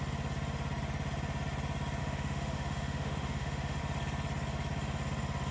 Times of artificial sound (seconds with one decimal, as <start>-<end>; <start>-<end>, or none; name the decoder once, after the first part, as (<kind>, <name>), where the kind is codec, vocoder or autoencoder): 2.0-3.8 (autoencoder, DAC-VAE)